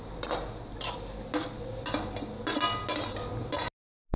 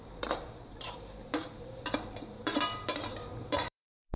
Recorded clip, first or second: first